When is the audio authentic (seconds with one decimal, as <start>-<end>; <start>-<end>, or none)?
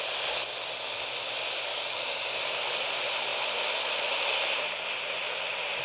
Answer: 0.0-1.7; 2.4-5.8